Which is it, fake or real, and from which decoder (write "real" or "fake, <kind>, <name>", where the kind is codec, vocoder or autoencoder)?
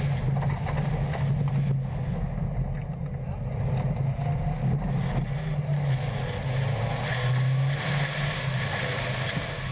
real